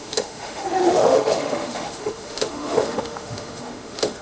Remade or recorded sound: remade